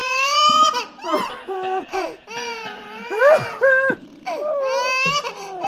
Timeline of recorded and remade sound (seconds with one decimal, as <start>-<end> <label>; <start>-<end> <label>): 0.0-3.2 remade; 3.2-5.7 recorded